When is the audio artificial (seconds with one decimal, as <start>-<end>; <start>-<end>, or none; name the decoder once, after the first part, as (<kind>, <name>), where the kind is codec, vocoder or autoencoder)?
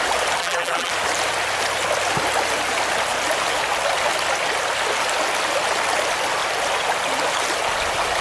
0.4-0.9 (vocoder, BigVGAN v2)